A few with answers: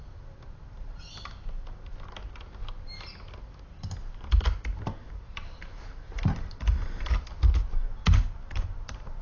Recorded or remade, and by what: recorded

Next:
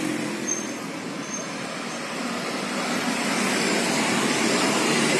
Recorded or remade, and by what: recorded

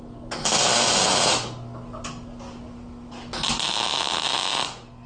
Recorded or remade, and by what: recorded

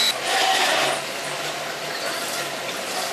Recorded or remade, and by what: recorded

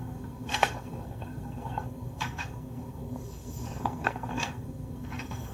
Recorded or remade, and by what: remade, codec, SNAC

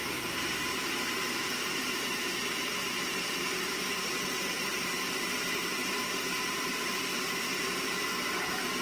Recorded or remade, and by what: remade, vocoder, BigVGAN v2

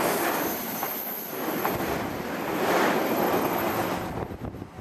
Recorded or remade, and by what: recorded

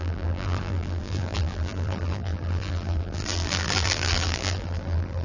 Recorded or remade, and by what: remade, vocoder, BigVGAN v2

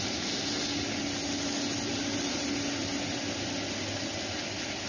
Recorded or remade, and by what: recorded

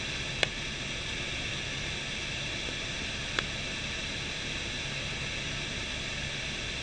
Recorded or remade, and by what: recorded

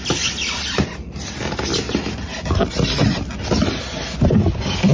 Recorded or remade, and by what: recorded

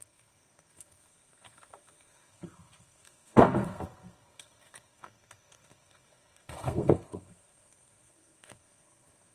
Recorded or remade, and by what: remade, codec, SNAC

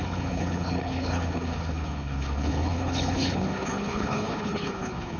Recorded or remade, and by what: remade, codec, HILCodec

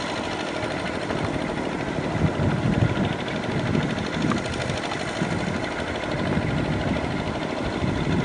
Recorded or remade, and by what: recorded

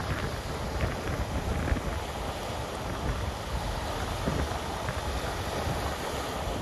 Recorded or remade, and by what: recorded